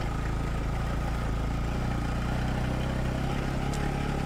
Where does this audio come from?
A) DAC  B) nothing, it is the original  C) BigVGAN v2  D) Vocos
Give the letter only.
B